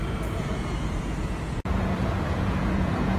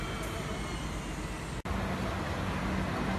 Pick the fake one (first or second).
first